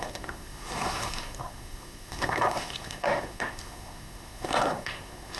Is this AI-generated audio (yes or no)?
yes